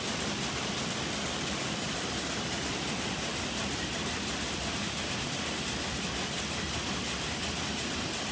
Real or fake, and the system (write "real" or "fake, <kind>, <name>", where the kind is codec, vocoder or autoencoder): real